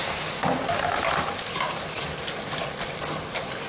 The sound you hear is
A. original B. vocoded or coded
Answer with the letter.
A